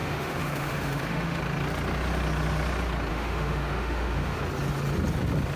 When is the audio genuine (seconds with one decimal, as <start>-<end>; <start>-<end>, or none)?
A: 1.4-3.1; 4.4-5.6

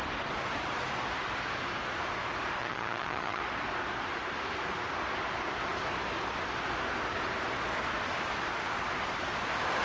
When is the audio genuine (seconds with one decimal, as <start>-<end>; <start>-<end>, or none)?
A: 0.0-2.6; 3.4-9.8

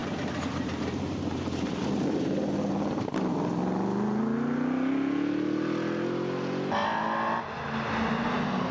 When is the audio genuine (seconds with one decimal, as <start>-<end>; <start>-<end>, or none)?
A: 1.8-8.7

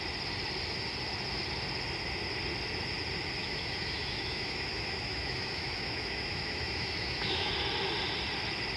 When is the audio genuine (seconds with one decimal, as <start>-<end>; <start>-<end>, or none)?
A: 0.0-3.4; 7.5-8.8

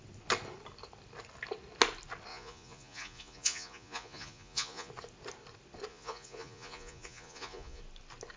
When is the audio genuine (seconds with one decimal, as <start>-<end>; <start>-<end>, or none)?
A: 0.0-2.3; 4.9-5.9; 7.8-8.4